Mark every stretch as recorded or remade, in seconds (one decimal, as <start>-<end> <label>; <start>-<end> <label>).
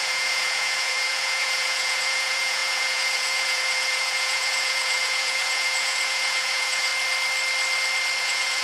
0.0-6.9 remade; 6.9-8.2 recorded; 8.2-8.6 remade